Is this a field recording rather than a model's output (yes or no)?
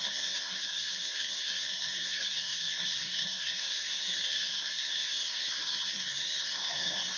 no